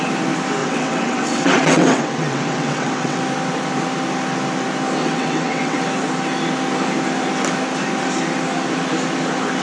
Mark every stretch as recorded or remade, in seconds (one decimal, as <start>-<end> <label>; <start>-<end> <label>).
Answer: 0.0-0.6 recorded; 0.6-3.2 remade; 3.2-5.0 recorded; 5.0-5.8 remade; 5.8-9.6 recorded